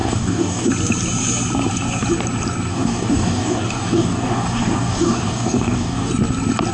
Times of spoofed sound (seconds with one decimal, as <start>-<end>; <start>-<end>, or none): 0.0-0.7; 2.7-6.1